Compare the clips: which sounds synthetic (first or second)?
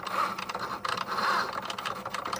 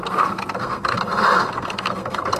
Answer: second